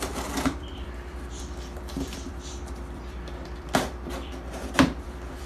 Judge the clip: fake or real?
fake